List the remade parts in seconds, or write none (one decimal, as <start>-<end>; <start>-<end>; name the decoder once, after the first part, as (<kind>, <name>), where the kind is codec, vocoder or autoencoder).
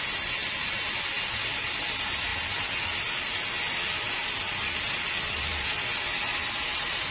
none